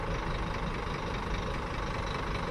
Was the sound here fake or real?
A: real